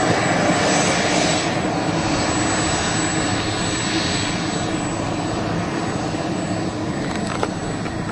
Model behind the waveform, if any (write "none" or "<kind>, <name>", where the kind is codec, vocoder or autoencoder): none